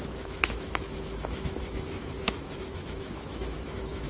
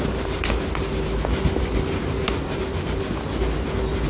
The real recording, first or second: second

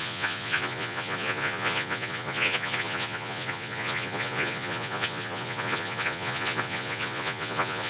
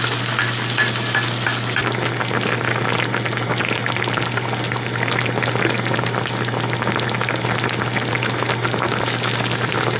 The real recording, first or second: second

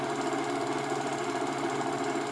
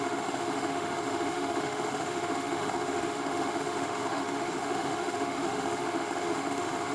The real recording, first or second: first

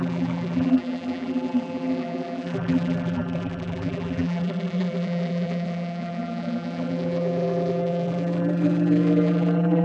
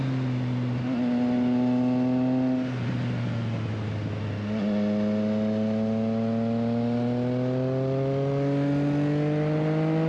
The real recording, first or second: second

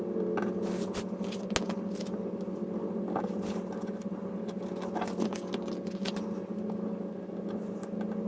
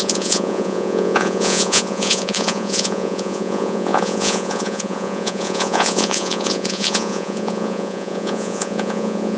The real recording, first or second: first